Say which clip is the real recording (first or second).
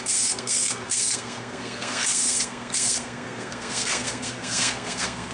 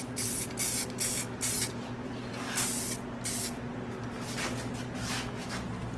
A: second